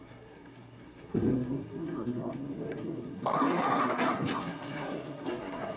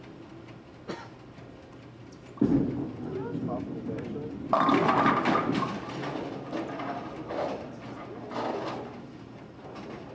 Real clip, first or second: second